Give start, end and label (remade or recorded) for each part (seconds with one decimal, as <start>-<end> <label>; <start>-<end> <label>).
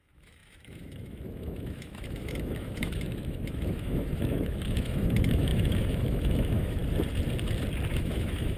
0.0-6.8 remade; 6.8-7.9 recorded; 7.9-8.6 remade